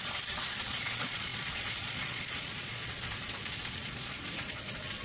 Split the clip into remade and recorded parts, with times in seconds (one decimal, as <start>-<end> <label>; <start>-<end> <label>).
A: 0.0-5.0 remade